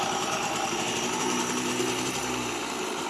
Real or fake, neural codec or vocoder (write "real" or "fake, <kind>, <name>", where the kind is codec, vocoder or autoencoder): fake, vocoder, BigVGAN v2